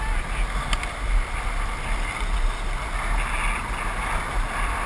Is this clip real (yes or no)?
yes